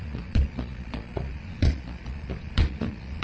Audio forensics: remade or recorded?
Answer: remade